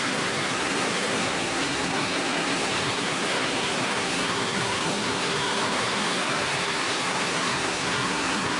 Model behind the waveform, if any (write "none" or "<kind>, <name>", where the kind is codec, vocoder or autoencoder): codec, SNAC